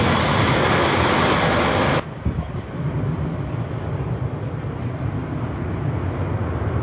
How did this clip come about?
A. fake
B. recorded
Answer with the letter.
B